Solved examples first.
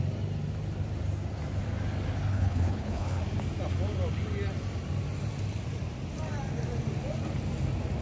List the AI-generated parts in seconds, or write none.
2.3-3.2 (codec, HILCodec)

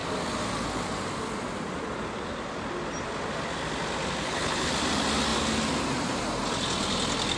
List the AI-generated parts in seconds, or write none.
4.2-4.7 (codec, HILCodec)

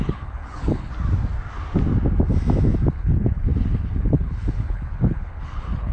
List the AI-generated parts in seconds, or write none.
0.0-0.9 (codec, HILCodec); 2.9-5.9

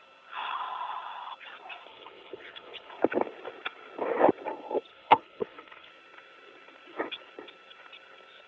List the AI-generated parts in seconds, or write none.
1.9-2.9 (codec, HILCodec); 4.9-5.9